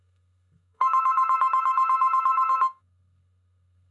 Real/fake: fake